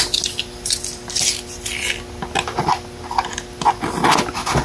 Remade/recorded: recorded